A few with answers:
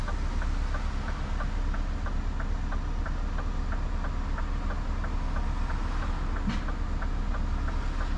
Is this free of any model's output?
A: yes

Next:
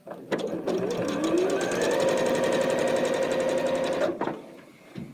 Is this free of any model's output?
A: yes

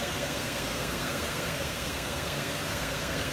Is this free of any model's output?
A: no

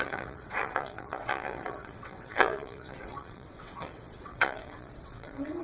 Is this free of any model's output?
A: no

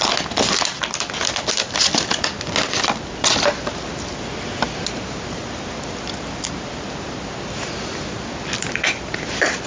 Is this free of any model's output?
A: yes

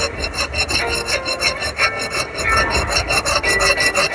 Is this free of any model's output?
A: yes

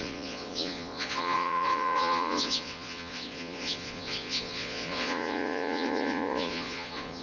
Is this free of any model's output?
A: no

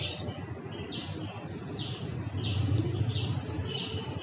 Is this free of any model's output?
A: yes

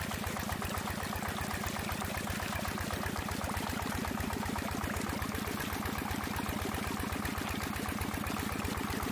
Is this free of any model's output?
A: yes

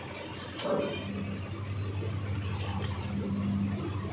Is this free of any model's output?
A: yes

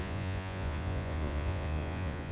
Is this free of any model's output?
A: no